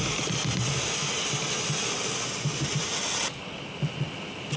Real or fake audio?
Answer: real